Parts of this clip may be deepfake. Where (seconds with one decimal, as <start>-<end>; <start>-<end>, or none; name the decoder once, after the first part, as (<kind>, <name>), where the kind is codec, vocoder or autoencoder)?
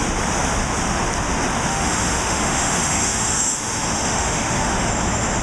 1.7-4.9 (autoencoder, DAC-VAE)